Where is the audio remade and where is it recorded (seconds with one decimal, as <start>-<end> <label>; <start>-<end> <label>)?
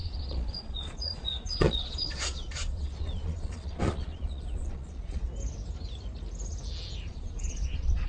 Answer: 0.0-5.3 remade; 5.3-7.1 recorded; 7.1-8.1 remade